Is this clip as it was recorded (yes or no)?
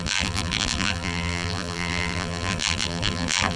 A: no